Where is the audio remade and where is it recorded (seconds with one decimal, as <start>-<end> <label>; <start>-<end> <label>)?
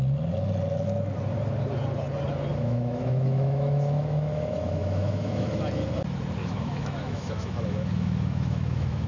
0.0-2.5 recorded; 2.5-5.6 remade; 5.6-6.4 recorded; 6.4-9.1 remade